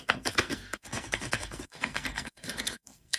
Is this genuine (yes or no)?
no